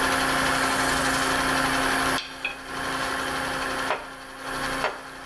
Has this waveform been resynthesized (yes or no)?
no